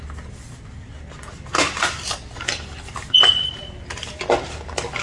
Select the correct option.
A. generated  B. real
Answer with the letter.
B